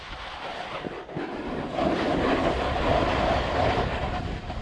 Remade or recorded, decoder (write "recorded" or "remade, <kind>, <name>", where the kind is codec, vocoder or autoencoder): recorded